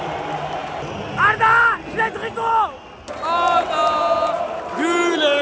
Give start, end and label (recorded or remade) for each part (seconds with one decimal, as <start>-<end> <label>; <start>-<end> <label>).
0.0-5.4 recorded